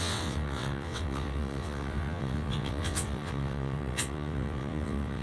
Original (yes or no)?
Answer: no